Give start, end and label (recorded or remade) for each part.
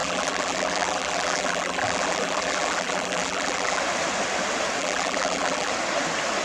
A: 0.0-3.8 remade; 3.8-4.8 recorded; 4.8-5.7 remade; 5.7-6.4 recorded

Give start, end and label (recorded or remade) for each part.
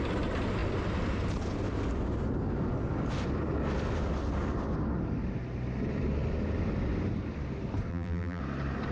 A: 0.0-7.9 recorded; 7.9-8.4 remade; 8.4-8.9 recorded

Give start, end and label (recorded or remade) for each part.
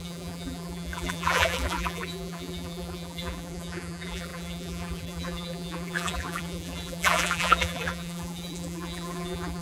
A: 0.0-9.6 remade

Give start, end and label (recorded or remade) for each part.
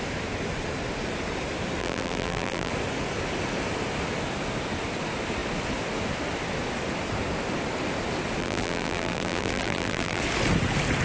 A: 0.0-1.8 recorded; 1.8-2.7 remade; 2.7-8.4 recorded; 8.4-10.2 remade; 10.2-11.0 recorded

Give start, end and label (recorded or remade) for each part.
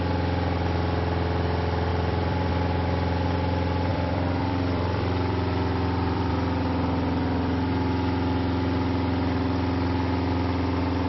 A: 0.0-1.9 recorded; 1.9-2.5 remade; 2.5-3.9 recorded; 3.9-6.3 remade; 6.3-11.1 recorded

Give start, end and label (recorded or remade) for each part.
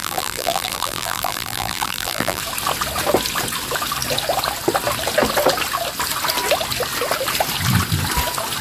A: 0.0-2.4 remade; 2.4-8.6 recorded